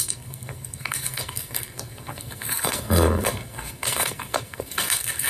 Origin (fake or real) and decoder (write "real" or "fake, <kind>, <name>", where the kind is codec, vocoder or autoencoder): fake, codec, SNAC